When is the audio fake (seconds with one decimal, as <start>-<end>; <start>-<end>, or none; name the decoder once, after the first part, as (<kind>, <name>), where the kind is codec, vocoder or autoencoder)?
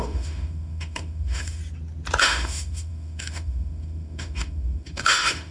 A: 0.0-1.6 (autoencoder, DAC-VAE); 2.2-5.5